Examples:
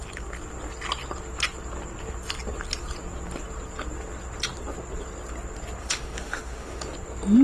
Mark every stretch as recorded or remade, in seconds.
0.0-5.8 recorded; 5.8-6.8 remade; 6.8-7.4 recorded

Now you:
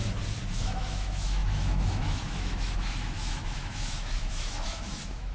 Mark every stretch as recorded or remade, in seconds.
0.0-0.6 recorded; 0.6-5.3 remade

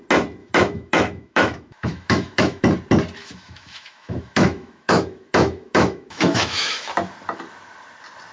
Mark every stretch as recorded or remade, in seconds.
0.0-0.4 recorded; 0.4-2.6 remade; 2.6-3.2 recorded; 3.2-6.9 remade; 6.9-8.3 recorded

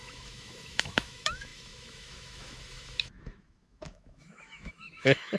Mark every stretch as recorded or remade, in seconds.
0.0-5.4 remade

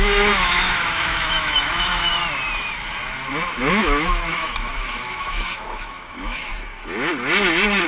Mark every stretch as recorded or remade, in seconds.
0.0-2.1 remade; 2.1-3.7 recorded; 3.7-6.5 remade; 6.5-7.9 recorded